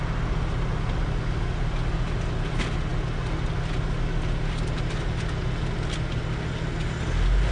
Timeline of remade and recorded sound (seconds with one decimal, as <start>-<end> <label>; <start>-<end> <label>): 0.0-7.5 recorded